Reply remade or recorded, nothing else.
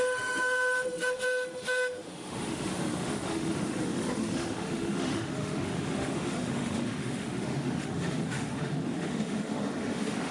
remade